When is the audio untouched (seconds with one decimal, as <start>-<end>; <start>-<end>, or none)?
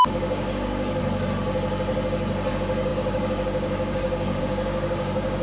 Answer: 1.0-2.5